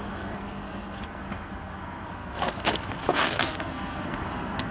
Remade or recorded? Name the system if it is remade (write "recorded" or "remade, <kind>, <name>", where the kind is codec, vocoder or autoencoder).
remade, codec, SNAC